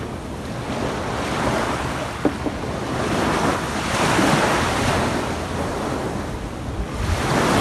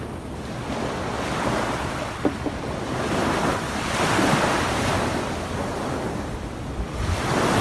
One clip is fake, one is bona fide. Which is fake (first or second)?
second